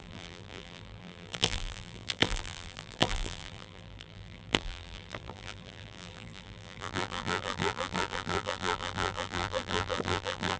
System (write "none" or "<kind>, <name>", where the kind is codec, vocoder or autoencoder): vocoder, BigVGAN v2